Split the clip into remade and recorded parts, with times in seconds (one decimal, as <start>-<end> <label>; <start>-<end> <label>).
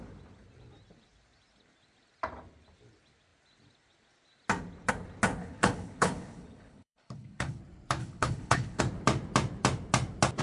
0.0-5.4 recorded; 5.4-7.6 remade; 7.6-8.0 recorded; 8.0-8.8 remade; 8.8-10.4 recorded